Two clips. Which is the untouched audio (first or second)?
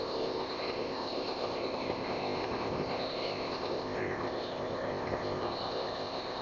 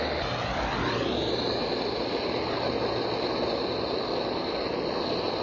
second